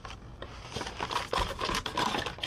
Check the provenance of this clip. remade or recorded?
recorded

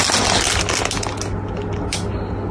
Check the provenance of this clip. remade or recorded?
recorded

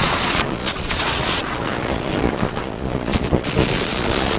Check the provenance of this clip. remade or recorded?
remade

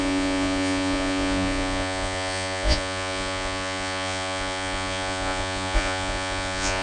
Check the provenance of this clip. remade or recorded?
remade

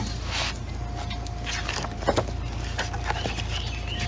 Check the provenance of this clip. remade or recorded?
recorded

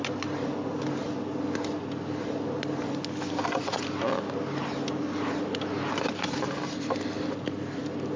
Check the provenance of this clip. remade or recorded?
recorded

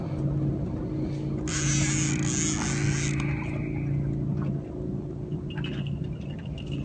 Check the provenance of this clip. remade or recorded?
recorded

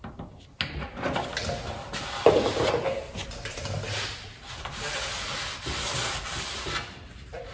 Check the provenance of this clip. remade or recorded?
recorded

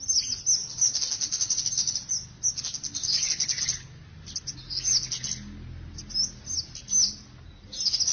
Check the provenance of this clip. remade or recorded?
recorded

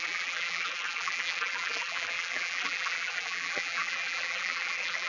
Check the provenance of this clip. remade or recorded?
remade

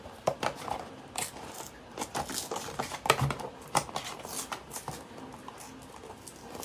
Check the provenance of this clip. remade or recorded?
recorded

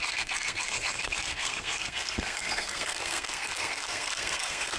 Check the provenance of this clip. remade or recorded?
remade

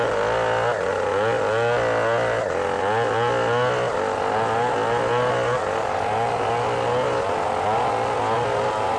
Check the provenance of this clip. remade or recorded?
recorded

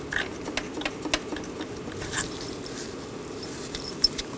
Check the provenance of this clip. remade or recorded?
recorded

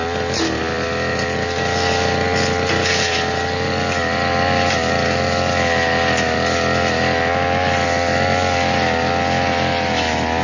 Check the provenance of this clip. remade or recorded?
recorded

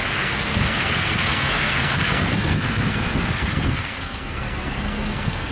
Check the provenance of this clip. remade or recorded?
remade